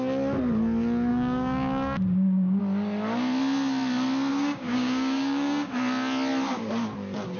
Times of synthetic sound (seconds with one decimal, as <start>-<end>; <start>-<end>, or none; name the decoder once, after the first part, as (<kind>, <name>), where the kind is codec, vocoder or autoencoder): 1.1-2.6 (codec, DAC); 4.3-5.7